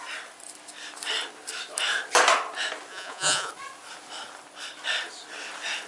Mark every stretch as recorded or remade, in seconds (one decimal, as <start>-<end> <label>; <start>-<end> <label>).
0.0-2.9 recorded; 2.9-3.5 remade; 3.5-5.9 recorded